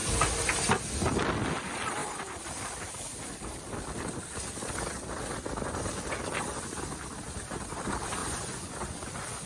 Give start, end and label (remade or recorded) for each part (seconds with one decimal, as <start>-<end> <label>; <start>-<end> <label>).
0.0-8.2 recorded; 8.2-8.7 remade; 8.7-9.5 recorded